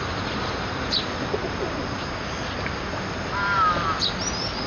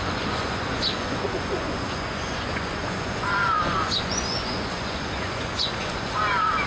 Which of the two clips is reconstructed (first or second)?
second